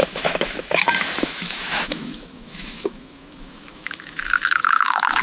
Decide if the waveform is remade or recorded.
remade